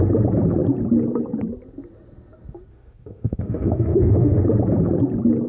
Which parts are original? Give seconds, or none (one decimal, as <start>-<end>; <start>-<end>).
0.0-2.7; 4.4-5.5